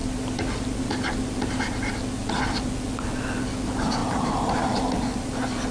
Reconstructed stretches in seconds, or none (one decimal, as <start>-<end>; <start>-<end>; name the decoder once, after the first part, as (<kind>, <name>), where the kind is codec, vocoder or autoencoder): 0.0-2.4 (vocoder, BigVGAN v2); 4.0-5.7